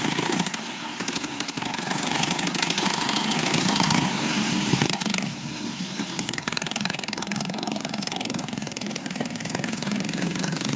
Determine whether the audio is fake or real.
fake